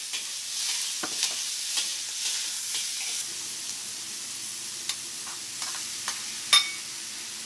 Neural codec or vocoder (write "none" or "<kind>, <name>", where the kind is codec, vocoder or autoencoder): none